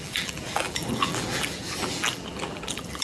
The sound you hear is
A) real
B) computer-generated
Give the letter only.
B